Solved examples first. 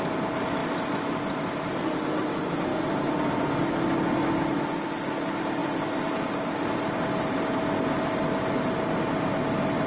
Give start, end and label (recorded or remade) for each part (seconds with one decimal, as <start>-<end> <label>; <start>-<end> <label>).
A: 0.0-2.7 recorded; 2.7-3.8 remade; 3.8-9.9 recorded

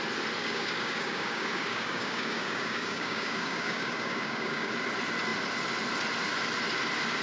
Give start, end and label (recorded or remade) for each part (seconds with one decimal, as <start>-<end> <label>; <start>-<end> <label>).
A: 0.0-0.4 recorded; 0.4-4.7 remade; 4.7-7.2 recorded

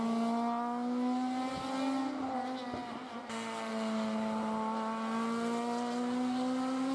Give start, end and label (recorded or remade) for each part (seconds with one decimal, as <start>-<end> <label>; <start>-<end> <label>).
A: 0.0-2.8 recorded; 2.8-3.7 remade; 3.7-6.9 recorded